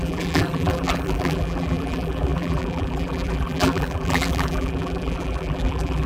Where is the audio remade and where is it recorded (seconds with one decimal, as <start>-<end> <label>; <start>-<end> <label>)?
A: 0.0-6.1 remade